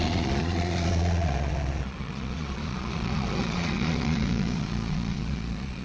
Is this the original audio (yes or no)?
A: no